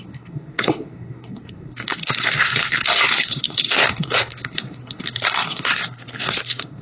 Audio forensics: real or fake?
fake